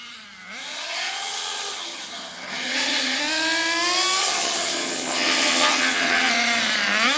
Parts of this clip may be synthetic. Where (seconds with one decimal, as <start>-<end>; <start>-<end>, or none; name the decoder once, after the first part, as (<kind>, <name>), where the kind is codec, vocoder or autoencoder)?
0.6-3.2 (vocoder, HiFi-GAN); 4.2-6.3